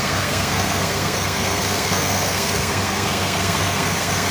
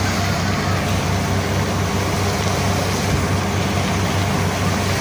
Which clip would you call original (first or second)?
second